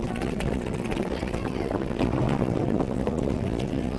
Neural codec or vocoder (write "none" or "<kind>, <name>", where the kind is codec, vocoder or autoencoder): vocoder, WaveNeXt